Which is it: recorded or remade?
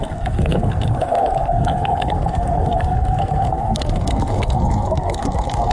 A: remade